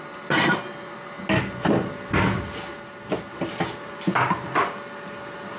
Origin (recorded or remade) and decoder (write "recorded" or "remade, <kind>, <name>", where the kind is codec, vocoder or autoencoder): recorded